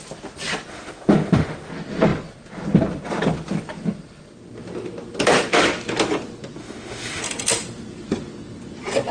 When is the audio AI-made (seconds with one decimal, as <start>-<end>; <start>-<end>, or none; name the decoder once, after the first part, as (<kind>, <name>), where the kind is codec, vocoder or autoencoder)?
0.7-1.7 (autoencoder, DAC-VAE); 6.6-7.2

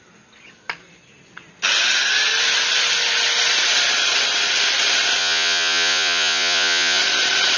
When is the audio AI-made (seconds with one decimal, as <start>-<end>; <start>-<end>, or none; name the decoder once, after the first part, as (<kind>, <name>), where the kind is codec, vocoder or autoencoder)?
5.2-7.0 (vocoder, Vocos)

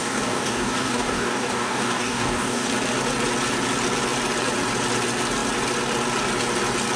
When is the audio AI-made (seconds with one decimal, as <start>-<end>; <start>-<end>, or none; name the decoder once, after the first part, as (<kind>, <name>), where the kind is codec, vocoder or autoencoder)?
0.0-2.7 (codec, DAC)

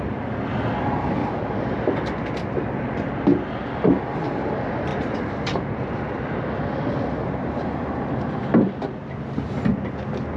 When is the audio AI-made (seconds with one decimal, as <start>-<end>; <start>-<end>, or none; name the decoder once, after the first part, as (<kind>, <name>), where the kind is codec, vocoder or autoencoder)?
1.2-1.7 (vocoder, BigVGAN v2); 4.9-9.9

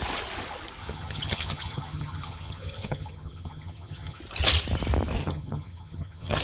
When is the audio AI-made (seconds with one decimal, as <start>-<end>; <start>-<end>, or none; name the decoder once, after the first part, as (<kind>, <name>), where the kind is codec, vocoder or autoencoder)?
0.8-4.2 (vocoder, HiFi-GAN); 5.2-6.4

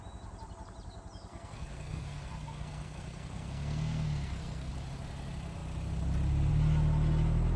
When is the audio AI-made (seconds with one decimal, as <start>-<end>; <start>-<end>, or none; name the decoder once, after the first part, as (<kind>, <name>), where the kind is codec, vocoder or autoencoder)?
1.3-4.7 (codec, SNAC)

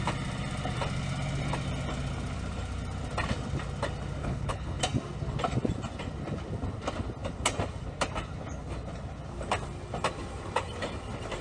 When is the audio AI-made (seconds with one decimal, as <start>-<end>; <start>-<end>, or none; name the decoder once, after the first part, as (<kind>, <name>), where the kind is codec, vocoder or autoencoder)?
4.2-4.8 (codec, HILCodec)

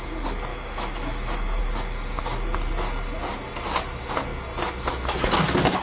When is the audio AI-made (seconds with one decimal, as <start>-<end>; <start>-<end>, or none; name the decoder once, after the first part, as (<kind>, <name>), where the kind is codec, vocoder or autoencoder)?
0.5-1.6 (autoencoder, DAC-VAE)